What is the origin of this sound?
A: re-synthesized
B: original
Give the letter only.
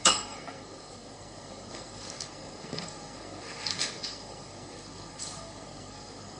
A